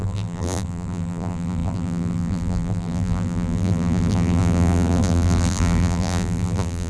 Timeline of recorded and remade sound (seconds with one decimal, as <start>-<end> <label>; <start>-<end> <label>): 0.0-6.9 remade